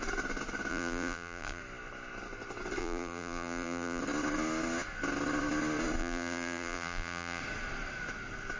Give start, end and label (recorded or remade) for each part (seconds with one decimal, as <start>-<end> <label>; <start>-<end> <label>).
0.0-0.7 recorded; 0.7-1.6 remade; 1.6-2.8 recorded; 2.8-4.0 remade; 4.0-6.0 recorded; 6.0-7.4 remade; 7.4-8.6 recorded

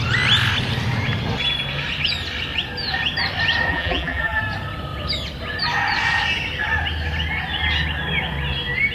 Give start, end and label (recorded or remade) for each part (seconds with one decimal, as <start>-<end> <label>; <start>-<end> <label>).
0.0-3.7 recorded; 3.7-4.4 remade; 4.4-8.9 recorded

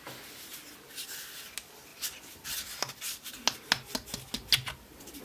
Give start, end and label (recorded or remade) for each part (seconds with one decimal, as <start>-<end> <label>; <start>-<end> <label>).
0.0-5.2 recorded

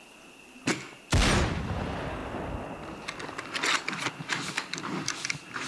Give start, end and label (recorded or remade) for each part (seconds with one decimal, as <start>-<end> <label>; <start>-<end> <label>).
0.0-5.7 recorded

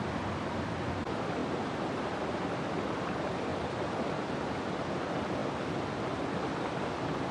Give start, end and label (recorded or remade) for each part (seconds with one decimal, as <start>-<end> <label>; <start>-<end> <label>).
0.0-3.5 recorded; 3.5-4.0 remade; 4.0-7.3 recorded

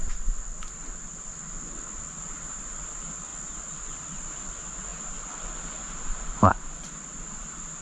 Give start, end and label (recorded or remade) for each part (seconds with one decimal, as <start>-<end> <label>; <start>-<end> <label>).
0.0-7.8 recorded

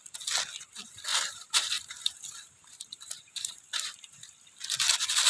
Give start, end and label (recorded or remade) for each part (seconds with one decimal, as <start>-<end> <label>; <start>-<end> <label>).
0.0-1.1 recorded; 1.1-4.3 remade; 4.3-5.3 recorded

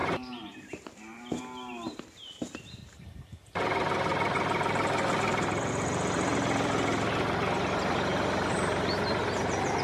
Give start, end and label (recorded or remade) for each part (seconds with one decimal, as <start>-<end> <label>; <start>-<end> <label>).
0.0-4.1 remade; 4.1-5.6 recorded; 5.6-6.3 remade; 6.3-7.6 recorded; 7.6-9.8 remade